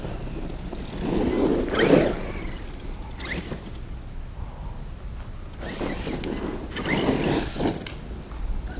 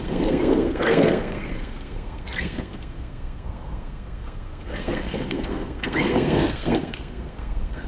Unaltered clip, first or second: first